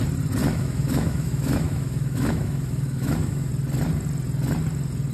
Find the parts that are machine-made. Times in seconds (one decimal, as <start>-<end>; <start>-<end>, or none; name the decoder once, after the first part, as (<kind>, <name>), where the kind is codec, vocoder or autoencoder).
0.4-3.5 (autoencoder, DAC-VAE)

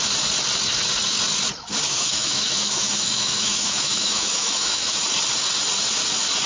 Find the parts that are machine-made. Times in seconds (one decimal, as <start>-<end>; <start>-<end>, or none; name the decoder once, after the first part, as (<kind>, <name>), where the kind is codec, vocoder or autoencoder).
1.9-5.0 (autoencoder, DAC-VAE)